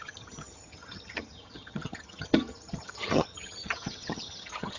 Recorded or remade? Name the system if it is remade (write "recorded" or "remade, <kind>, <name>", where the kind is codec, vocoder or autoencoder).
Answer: remade, vocoder, HiFi-GAN